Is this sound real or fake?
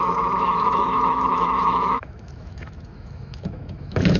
fake